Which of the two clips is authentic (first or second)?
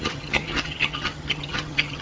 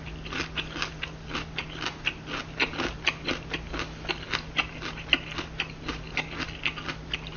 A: second